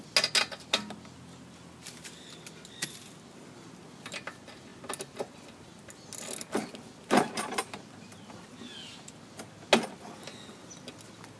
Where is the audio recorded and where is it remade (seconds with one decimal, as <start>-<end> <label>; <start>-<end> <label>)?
0.0-11.4 recorded